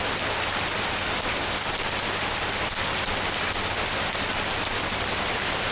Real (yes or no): yes